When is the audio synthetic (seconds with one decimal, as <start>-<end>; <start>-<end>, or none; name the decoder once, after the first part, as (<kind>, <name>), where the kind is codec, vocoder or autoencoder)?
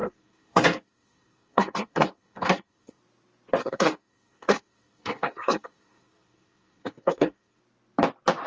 0.0-3.0 (codec, SNAC); 3.6-7.6